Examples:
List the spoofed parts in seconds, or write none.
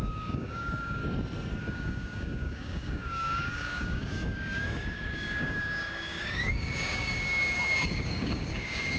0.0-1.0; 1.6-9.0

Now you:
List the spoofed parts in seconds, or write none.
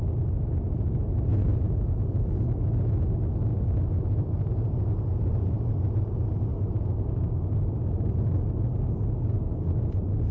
none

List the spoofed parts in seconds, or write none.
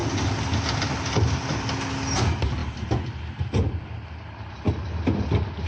2.6-4.5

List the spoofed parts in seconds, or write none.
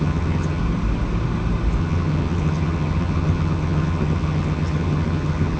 0.0-0.6; 1.8-5.6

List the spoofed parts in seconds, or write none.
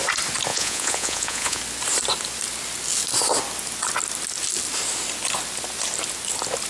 0.5-1.6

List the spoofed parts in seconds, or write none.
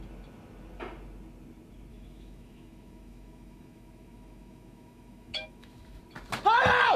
1.9-6.0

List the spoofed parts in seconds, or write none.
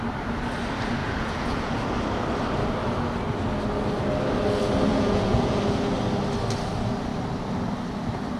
1.0-1.8; 4.9-5.6